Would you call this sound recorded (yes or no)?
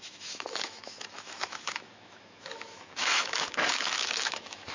no